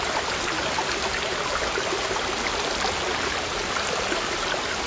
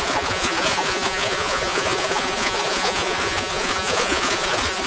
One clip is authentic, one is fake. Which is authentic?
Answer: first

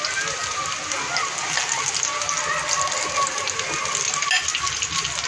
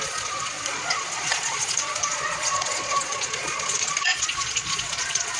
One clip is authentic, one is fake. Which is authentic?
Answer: first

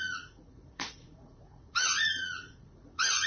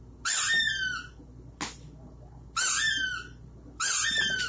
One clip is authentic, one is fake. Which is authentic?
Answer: second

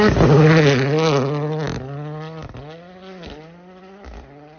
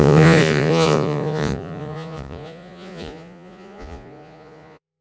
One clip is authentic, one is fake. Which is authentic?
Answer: first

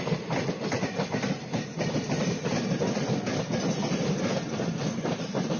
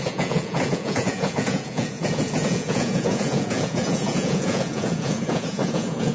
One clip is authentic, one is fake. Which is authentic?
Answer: first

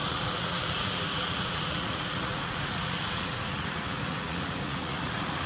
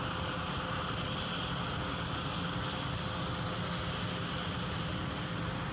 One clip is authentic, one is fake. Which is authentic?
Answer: second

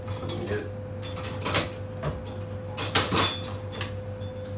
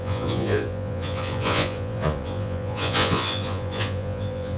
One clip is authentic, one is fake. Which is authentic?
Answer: first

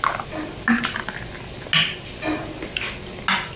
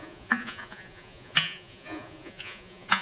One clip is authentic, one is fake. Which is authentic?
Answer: first